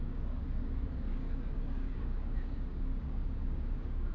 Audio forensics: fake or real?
fake